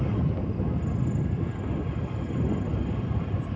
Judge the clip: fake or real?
real